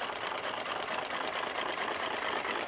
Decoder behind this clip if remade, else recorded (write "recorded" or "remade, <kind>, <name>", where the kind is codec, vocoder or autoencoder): recorded